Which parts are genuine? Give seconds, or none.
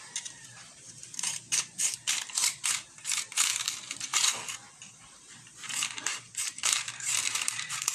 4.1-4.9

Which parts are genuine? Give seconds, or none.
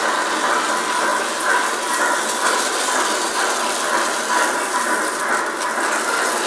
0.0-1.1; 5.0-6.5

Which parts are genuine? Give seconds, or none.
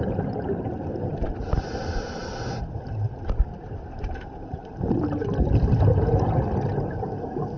2.2-4.0; 5.2-7.6